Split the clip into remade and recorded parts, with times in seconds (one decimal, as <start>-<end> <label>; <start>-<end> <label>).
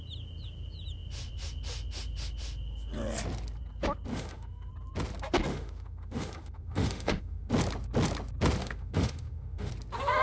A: 0.0-4.1 recorded; 4.1-4.7 remade; 4.7-5.5 recorded; 5.5-7.5 remade; 7.5-8.6 recorded; 8.6-9.7 remade; 9.7-10.2 recorded